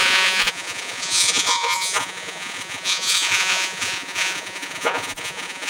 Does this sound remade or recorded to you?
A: remade